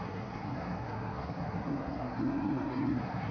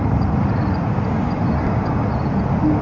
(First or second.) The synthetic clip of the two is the first